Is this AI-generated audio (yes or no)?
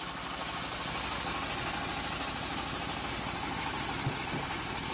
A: no